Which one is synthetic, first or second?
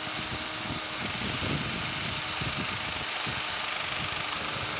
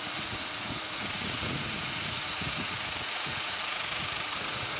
second